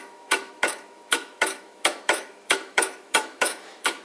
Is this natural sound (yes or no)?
no